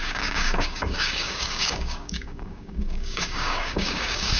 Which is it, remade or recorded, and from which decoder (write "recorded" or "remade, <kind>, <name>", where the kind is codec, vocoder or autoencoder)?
remade, codec, DAC